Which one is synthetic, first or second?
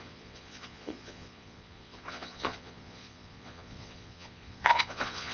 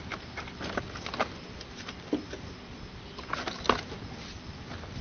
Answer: first